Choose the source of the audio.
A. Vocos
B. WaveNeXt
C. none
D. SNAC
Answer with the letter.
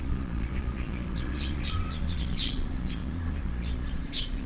A